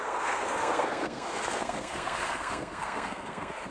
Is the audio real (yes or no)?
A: no